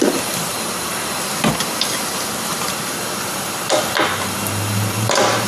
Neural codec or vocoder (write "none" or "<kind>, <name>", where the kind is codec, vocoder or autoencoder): none